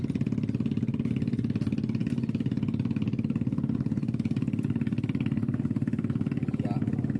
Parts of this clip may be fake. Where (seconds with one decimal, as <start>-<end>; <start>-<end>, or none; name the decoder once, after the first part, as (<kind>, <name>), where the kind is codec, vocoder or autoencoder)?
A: none